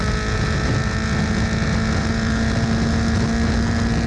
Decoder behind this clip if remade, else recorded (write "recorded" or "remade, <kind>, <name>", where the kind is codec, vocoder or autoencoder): recorded